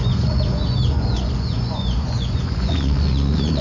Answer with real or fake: fake